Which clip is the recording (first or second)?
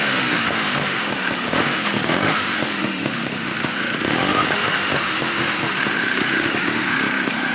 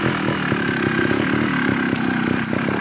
second